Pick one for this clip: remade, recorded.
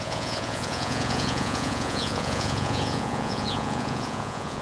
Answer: remade